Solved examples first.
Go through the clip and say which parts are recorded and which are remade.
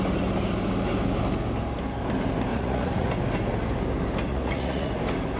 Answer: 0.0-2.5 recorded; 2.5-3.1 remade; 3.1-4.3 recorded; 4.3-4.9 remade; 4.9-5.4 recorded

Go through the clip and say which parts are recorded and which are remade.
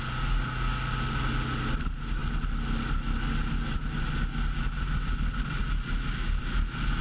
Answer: 0.0-7.0 recorded